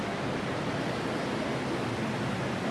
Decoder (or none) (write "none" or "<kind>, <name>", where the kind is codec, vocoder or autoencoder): none